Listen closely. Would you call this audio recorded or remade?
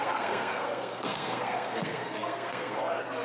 remade